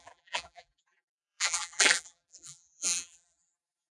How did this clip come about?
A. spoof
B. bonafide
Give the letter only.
A